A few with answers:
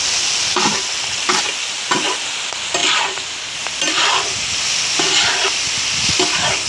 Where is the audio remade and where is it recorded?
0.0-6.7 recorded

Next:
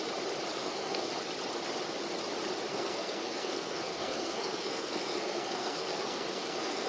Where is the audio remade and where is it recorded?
0.0-0.5 recorded; 0.5-1.1 remade; 1.1-2.7 recorded; 2.7-6.9 remade

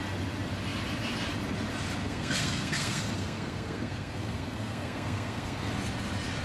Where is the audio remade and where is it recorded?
0.0-2.0 recorded; 2.0-5.8 remade; 5.8-6.4 recorded

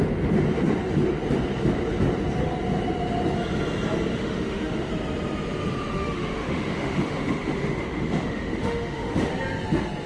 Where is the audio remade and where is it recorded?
0.0-4.1 recorded; 4.1-4.9 remade; 4.9-5.9 recorded; 5.9-9.3 remade; 9.3-10.1 recorded

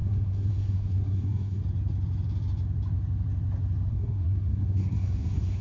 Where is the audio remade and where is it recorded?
0.0-1.6 remade; 1.6-3.9 recorded; 3.9-5.6 remade